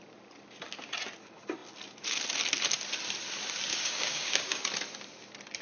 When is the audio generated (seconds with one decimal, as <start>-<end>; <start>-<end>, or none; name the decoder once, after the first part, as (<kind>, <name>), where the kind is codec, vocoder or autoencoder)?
3.7-4.6 (codec, DAC)